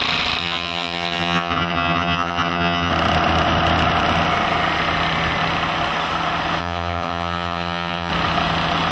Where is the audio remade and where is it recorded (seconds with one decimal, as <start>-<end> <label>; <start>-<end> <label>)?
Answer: 0.0-0.4 recorded; 0.4-2.9 remade; 2.9-6.6 recorded; 6.6-8.1 remade; 8.1-8.9 recorded